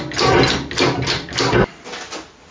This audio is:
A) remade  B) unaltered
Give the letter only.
B